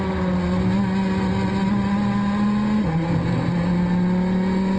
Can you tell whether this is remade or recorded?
recorded